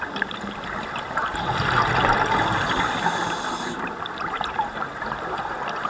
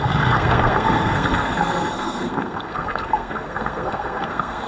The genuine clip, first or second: first